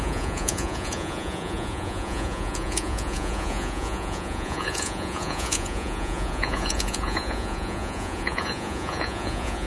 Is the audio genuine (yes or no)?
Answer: no